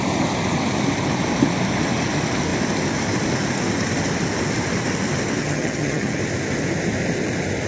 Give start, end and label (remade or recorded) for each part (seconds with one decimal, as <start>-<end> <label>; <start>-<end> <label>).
0.0-5.4 recorded; 5.4-6.2 remade; 6.2-7.7 recorded